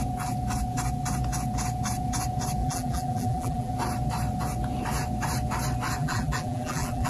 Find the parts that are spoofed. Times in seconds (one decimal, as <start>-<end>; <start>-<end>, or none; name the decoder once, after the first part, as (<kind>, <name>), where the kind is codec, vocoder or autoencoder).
2.6-3.7 (vocoder, BigVGAN v2); 6.0-7.1